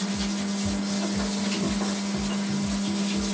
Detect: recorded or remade recorded